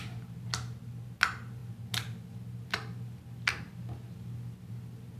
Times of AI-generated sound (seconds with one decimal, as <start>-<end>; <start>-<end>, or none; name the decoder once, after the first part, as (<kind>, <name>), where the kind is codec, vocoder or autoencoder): none